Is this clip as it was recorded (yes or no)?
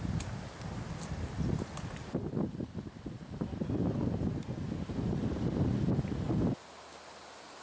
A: yes